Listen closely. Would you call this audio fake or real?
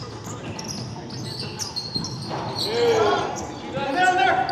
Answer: real